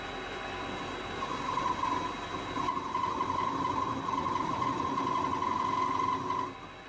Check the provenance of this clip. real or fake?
real